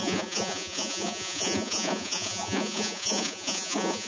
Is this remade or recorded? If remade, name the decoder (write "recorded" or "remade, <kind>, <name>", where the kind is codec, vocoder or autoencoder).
remade, vocoder, Vocos